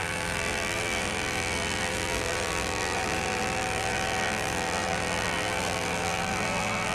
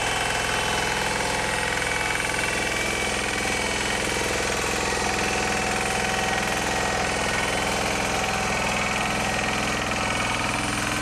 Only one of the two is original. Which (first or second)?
second